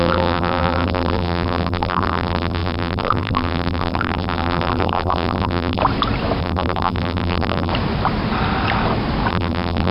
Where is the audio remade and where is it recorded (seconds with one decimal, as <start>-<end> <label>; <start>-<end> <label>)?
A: 0.0-5.8 remade; 5.8-6.4 recorded; 6.4-7.7 remade; 7.7-9.3 recorded; 9.3-9.9 remade